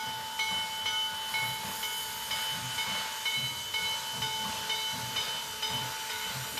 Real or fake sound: real